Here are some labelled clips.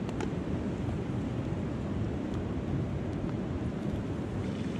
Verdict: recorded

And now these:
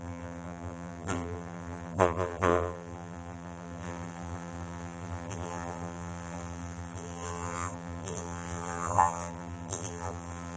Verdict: remade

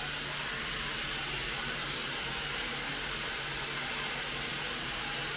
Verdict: recorded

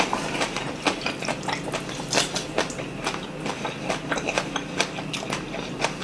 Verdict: recorded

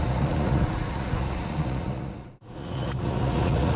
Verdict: remade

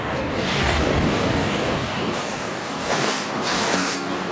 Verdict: remade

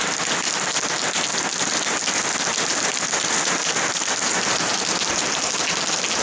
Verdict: recorded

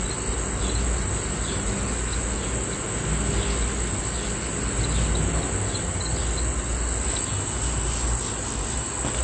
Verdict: recorded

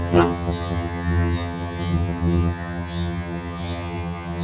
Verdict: remade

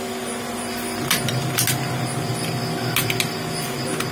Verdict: recorded